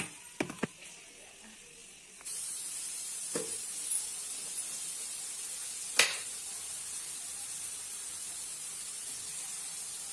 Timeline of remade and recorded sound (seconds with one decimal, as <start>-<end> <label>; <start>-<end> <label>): 0.0-10.1 recorded